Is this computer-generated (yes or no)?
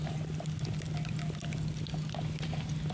no